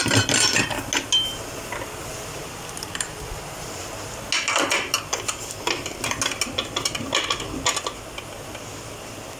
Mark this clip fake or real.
real